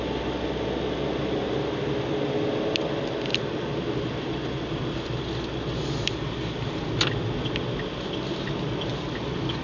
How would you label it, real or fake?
real